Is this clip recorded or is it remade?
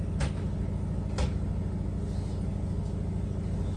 recorded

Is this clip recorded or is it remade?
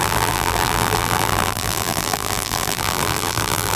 remade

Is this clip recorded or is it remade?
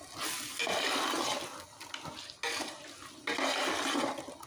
recorded